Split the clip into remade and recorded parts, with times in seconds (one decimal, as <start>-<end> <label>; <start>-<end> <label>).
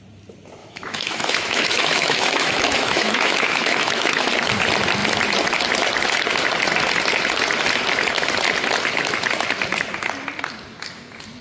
0.0-0.6 recorded; 0.6-4.3 remade; 4.3-11.4 recorded